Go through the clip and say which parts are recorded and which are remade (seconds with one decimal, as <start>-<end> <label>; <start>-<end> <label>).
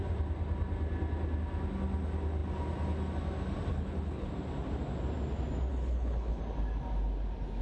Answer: 0.0-3.7 recorded; 3.7-4.3 remade; 4.3-5.7 recorded; 5.7-6.4 remade; 6.4-7.6 recorded